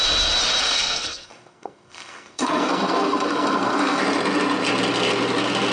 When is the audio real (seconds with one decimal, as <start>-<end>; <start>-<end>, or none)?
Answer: 0.0-0.6; 4.0-5.7